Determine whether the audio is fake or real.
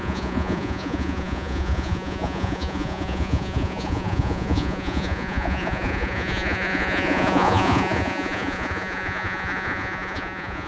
fake